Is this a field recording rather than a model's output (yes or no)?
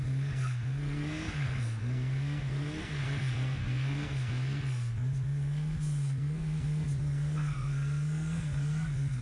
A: no